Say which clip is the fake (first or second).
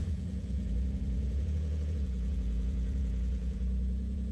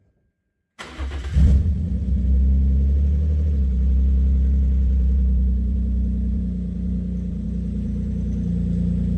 first